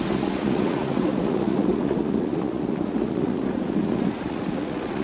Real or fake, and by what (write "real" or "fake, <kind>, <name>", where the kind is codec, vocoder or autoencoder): fake, vocoder, Vocos